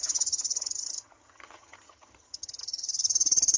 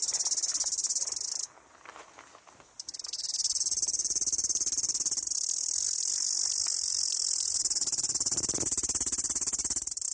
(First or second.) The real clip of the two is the second